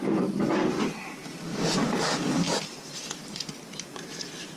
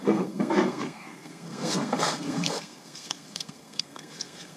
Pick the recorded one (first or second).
first